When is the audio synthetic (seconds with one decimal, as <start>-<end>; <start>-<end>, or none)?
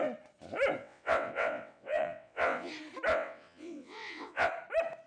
0.8-2.7; 3.1-4.5